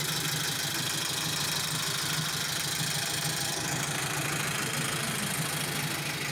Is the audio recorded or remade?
recorded